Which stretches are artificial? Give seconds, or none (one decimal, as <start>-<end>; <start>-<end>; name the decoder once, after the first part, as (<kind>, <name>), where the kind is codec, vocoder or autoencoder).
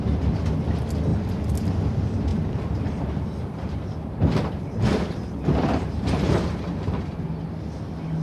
2.3-7.2 (vocoder, BigVGAN v2)